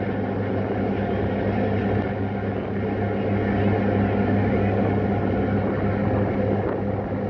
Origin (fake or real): real